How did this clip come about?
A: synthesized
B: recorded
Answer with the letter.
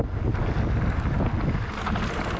B